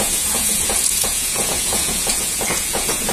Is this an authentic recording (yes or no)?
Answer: no